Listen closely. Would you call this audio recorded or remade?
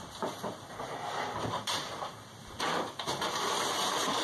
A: remade